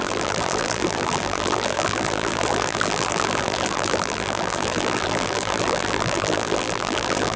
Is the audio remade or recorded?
remade